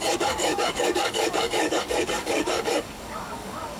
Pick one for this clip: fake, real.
fake